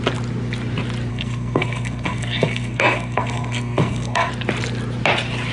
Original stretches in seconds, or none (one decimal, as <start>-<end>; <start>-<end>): 0.0-1.1; 4.3-5.5